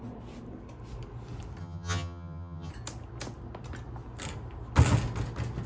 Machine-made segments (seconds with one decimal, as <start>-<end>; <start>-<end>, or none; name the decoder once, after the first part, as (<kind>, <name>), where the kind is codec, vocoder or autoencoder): 1.6-2.7 (vocoder, HiFi-GAN)